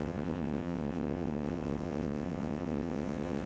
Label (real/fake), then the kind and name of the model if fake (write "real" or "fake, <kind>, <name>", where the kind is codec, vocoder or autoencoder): fake, vocoder, WaveNeXt